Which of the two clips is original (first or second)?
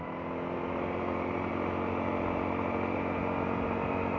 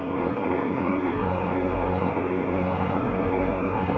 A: first